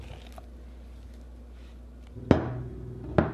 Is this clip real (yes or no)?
yes